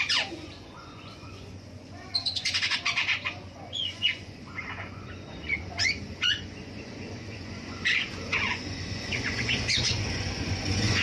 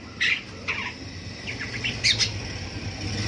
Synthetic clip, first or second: first